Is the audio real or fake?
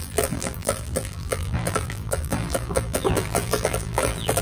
fake